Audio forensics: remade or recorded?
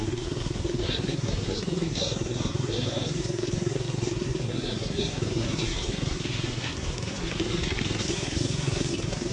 remade